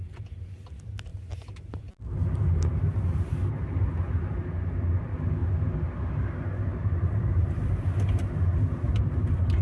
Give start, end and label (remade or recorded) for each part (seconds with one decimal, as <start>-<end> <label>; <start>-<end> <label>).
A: 0.0-6.7 recorded; 6.7-8.4 remade; 8.4-9.6 recorded